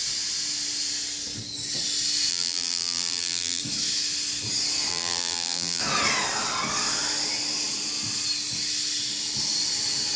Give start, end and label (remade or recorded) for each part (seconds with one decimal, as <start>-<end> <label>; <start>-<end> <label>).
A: 0.0-2.3 recorded; 2.3-3.6 remade; 3.6-4.9 recorded; 4.9-5.8 remade; 5.8-10.2 recorded